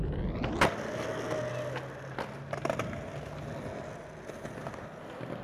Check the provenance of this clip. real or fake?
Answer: real